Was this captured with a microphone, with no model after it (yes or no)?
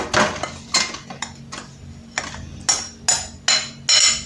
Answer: yes